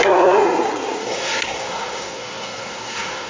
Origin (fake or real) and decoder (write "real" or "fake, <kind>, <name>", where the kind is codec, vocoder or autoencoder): fake, codec, SNAC